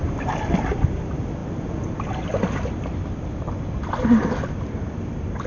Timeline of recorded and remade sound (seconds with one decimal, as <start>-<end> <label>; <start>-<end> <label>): 0.0-5.5 recorded